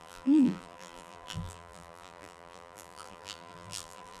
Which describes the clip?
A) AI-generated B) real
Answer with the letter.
A